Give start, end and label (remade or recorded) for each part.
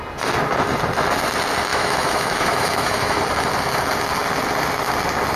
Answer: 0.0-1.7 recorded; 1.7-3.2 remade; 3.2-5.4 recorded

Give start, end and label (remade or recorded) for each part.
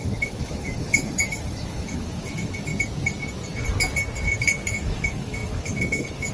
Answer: 0.0-2.7 remade; 2.7-4.7 recorded; 4.7-6.3 remade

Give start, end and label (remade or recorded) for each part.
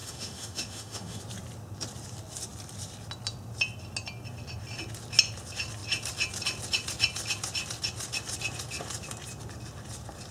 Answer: 0.0-1.2 remade; 1.2-10.3 recorded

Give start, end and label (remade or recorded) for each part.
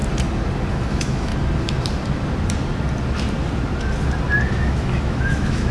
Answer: 0.0-0.7 recorded; 0.7-1.3 remade; 1.3-4.6 recorded; 4.6-5.7 remade